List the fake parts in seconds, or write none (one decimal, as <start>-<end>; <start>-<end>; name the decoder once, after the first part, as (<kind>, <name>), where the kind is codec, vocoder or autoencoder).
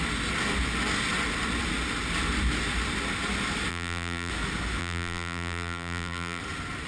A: 3.7-4.3 (vocoder, BigVGAN v2); 4.8-6.4